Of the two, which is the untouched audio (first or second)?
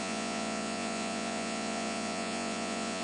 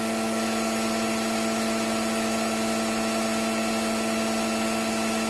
second